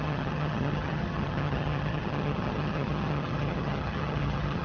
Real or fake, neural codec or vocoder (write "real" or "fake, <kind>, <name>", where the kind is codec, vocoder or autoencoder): fake, vocoder, HiFi-GAN